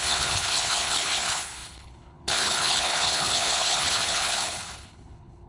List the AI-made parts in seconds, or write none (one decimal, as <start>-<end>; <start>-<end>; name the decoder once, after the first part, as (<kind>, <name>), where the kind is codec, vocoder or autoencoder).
0.0-5.5 (codec, HILCodec)